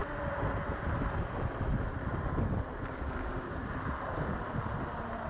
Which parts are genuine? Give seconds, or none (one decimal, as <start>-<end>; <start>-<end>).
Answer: none